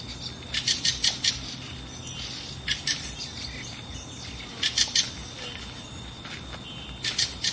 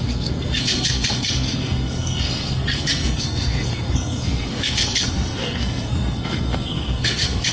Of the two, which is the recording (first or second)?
first